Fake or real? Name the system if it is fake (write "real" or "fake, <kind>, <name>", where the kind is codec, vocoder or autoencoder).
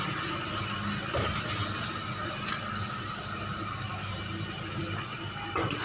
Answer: real